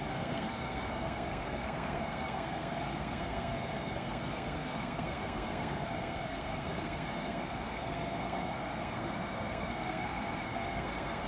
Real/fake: fake